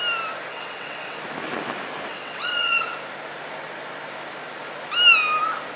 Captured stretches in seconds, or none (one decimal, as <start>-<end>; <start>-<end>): 0.0-0.5; 1.2-2.1; 2.8-5.8